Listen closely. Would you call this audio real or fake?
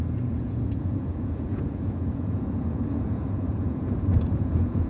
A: fake